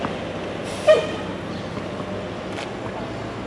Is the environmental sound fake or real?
real